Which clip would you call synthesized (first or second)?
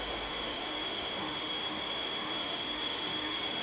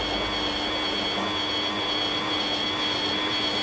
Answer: first